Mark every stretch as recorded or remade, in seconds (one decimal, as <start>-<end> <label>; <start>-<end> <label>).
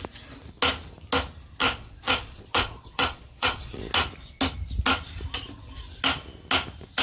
0.0-1.6 recorded; 1.6-3.8 remade; 3.8-7.0 recorded